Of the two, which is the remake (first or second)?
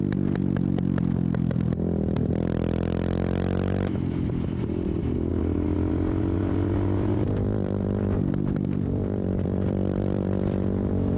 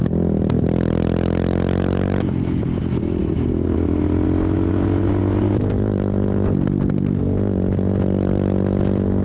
first